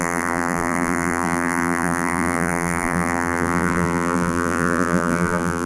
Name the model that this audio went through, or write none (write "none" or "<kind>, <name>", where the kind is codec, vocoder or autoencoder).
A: vocoder, BigVGAN v2